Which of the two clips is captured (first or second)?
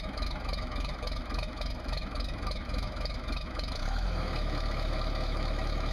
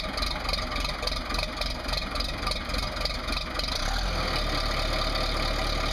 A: second